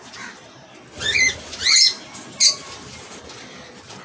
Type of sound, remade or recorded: recorded